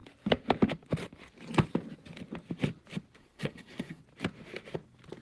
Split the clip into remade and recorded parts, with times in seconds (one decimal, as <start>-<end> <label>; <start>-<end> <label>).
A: 0.0-3.2 recorded; 3.2-4.0 remade; 4.0-5.2 recorded